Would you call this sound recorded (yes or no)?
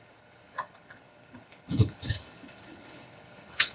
no